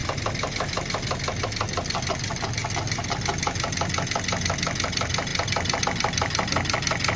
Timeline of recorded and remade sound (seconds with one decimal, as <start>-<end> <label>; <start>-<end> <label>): 0.0-7.2 recorded